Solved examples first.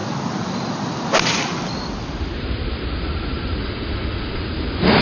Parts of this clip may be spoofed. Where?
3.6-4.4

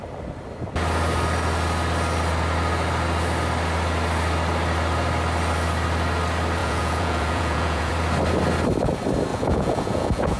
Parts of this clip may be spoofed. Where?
6.6-7.9; 9.3-10.4

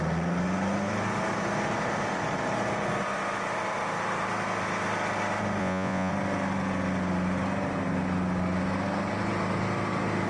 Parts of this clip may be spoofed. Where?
5.6-6.1

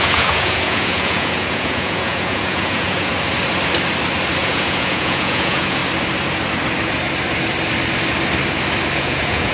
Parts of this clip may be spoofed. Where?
0.0-3.1; 4.4-5.8; 9.0-9.5

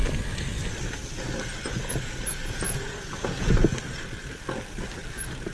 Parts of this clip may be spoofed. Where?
2.3-3.5

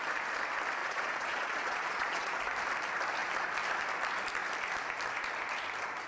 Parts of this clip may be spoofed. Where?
0.8-2.4

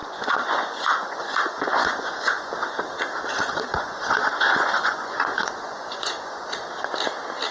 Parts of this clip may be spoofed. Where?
0.0-2.5; 3.7-6.4

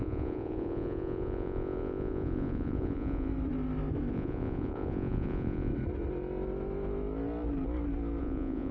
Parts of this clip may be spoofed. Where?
0.0-3.3; 4.1-5.7; 8.2-8.7